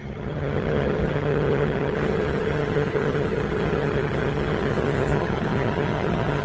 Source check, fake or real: fake